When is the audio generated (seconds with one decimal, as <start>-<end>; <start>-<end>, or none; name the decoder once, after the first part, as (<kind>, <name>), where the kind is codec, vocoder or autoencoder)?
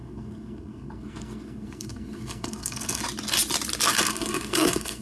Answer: 0.0-3.0 (codec, SNAC); 3.9-5.0